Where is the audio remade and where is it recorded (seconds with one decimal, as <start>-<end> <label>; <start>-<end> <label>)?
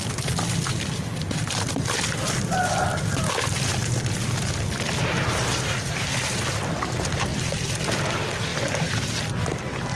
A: 0.0-10.0 recorded